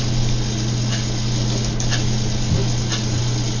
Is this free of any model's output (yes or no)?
yes